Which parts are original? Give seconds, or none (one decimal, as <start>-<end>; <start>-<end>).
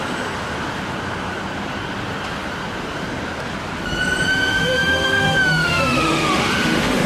0.0-4.3